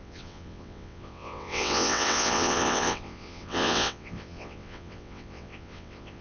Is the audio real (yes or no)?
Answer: no